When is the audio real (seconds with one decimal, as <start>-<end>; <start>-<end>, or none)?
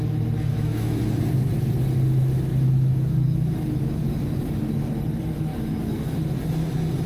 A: 0.0-0.5; 1.1-2.5; 3.8-5.5; 6.1-7.1